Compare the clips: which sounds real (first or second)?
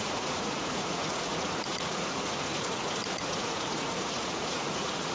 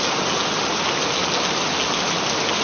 second